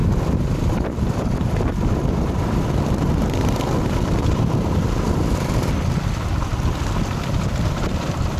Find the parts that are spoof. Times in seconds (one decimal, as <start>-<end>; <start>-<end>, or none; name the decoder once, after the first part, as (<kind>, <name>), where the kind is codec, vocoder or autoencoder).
none